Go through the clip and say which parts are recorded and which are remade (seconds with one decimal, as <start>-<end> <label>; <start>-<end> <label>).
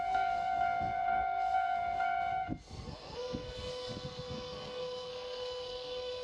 0.0-6.2 remade